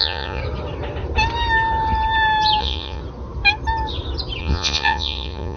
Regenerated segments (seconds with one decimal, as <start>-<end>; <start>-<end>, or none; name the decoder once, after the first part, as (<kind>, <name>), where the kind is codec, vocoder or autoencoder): 0.0-0.4 (vocoder, Vocos); 2.6-3.0; 4.4-5.6